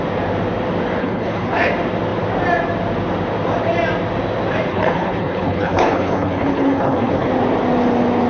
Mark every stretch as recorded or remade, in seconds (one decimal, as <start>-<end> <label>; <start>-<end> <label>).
0.0-1.0 recorded; 1.0-1.7 remade; 1.7-4.7 recorded; 4.7-7.3 remade; 7.3-8.3 recorded